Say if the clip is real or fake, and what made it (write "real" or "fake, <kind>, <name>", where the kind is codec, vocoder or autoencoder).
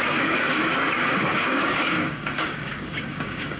fake, codec, DAC